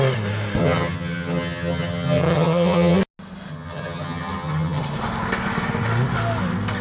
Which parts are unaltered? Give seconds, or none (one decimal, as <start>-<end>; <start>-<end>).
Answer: 0.0-0.6; 3.0-3.5; 4.8-6.8